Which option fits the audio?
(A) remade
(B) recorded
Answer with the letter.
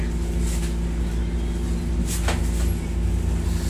B